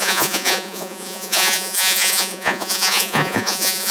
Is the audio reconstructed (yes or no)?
yes